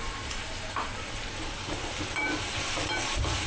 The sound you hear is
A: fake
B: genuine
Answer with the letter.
A